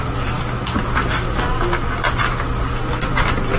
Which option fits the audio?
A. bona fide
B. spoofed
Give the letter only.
A